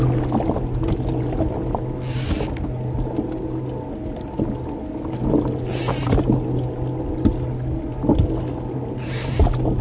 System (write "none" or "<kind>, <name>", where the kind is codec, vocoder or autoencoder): none